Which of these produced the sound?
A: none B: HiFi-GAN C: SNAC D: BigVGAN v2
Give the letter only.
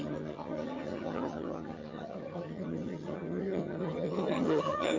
B